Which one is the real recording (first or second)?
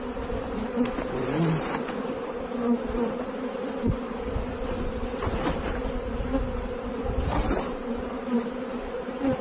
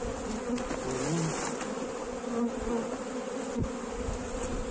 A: second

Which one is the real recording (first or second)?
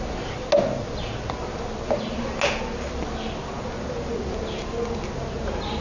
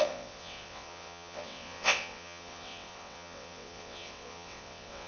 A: first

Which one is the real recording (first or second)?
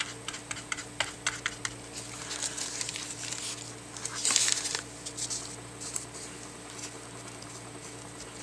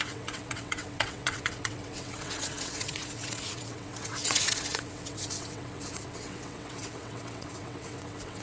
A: first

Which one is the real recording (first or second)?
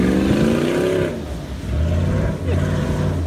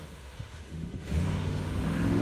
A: first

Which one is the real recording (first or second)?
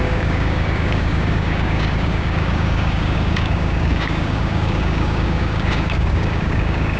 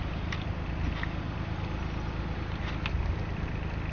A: second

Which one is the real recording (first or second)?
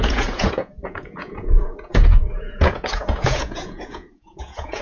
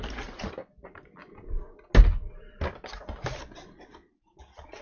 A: second